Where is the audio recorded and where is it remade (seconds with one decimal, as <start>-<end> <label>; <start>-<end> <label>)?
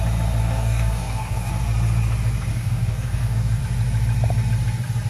0.0-0.4 recorded; 0.4-1.5 remade; 1.5-2.5 recorded; 2.5-3.6 remade; 3.6-5.1 recorded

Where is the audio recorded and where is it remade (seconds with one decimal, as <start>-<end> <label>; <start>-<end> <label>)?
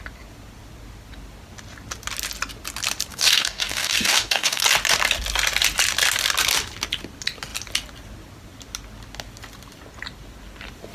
0.0-3.1 recorded; 3.1-4.6 remade; 4.6-10.9 recorded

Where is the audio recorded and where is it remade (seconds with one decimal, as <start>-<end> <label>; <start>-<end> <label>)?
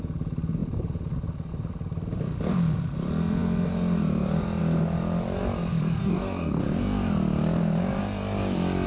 0.0-6.0 recorded; 6.0-6.6 remade; 6.6-8.9 recorded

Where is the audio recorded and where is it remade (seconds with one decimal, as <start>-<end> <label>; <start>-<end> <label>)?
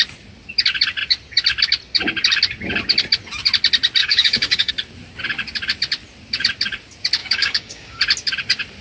0.0-4.0 recorded; 4.0-4.7 remade; 4.7-7.2 recorded; 7.2-8.0 remade; 8.0-8.8 recorded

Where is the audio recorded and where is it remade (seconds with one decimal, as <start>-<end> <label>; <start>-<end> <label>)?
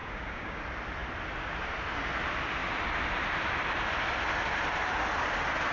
0.0-0.6 remade; 0.6-5.7 recorded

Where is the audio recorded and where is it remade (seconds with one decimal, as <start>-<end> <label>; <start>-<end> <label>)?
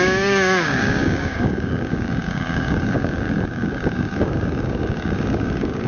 0.0-5.9 remade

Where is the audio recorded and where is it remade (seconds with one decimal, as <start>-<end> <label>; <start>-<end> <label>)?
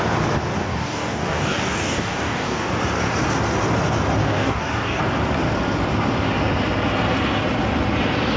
0.0-0.6 recorded; 0.6-2.7 remade; 2.7-4.2 recorded; 4.2-5.0 remade; 5.0-8.4 recorded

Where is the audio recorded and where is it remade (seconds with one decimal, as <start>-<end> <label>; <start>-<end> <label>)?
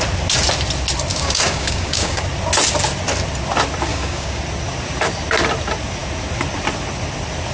0.0-1.1 recorded; 1.1-2.2 remade; 2.2-3.9 recorded; 3.9-4.4 remade; 4.4-7.5 recorded